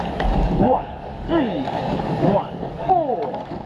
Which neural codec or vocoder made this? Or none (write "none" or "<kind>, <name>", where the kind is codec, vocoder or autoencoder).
codec, DAC